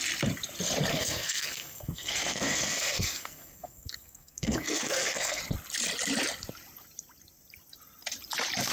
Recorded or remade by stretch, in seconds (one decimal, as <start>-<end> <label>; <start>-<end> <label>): 0.0-0.9 recorded; 0.9-5.4 remade; 5.4-8.7 recorded

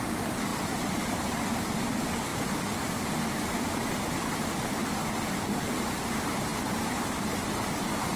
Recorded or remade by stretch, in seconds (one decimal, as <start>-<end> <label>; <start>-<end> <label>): 0.0-0.5 recorded; 0.5-1.1 remade; 1.1-2.3 recorded; 2.3-4.5 remade; 4.5-8.2 recorded

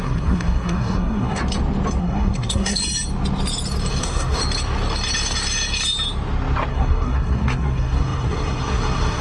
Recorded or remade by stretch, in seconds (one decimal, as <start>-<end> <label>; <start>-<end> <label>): 0.0-1.4 remade; 1.4-2.0 recorded; 2.0-2.8 remade; 2.8-4.0 recorded; 4.0-4.4 remade; 4.4-6.7 recorded; 6.7-9.2 remade

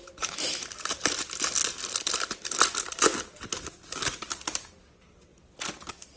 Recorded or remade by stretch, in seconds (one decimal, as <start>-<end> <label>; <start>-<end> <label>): 0.0-0.7 remade; 0.7-6.2 recorded

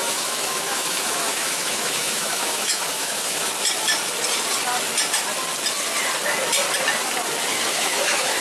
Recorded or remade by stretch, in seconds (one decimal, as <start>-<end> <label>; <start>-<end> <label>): 0.0-3.5 remade; 3.5-7.5 recorded; 7.5-8.4 remade